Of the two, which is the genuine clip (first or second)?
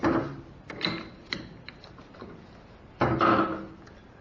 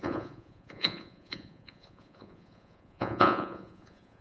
first